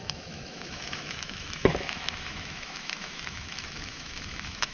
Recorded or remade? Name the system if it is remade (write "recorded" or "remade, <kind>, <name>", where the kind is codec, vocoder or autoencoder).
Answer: remade, autoencoder, DAC-VAE